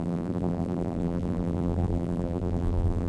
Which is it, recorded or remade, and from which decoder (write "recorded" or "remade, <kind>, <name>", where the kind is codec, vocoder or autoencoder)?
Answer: remade, vocoder, BigVGAN v2